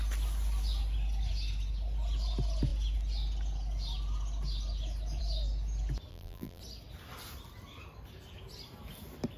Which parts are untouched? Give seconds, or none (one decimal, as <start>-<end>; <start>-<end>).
0.0-6.1; 6.6-9.4